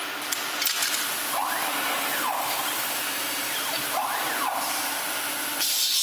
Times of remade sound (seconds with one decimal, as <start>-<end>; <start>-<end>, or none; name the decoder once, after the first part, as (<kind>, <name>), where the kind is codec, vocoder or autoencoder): 0.8-4.3 (vocoder, BigVGAN v2)